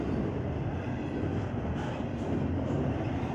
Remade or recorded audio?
recorded